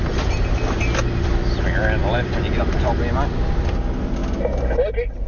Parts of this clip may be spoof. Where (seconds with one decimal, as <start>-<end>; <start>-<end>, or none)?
none